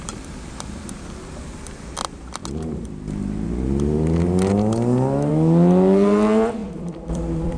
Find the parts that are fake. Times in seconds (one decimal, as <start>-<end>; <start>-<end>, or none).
6.6-7.6